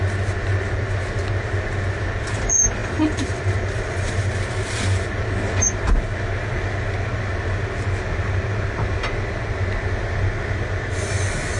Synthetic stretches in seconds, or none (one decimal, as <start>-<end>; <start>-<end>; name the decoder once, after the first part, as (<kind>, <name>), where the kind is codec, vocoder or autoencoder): 2.8-4.3 (vocoder, BigVGAN v2)